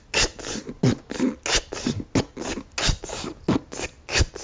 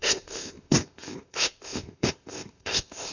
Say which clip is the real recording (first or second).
first